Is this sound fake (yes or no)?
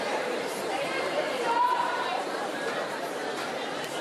yes